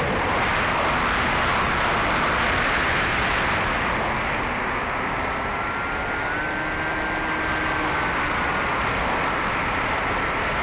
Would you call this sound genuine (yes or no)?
yes